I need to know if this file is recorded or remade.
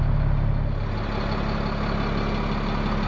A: recorded